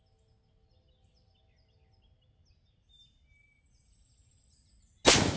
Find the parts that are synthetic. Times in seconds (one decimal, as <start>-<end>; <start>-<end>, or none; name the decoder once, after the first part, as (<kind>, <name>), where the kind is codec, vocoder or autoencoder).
none